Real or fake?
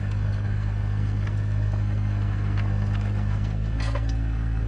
fake